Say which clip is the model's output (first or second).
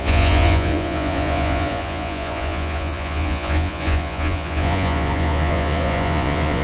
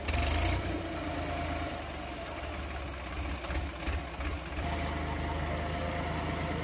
first